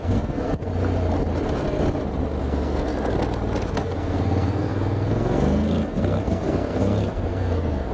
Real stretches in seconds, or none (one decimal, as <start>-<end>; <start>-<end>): 0.7-2.4; 2.9-3.7